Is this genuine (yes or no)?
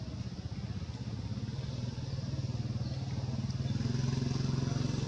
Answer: yes